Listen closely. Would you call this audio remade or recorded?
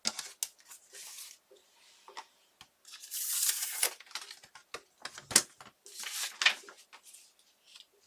recorded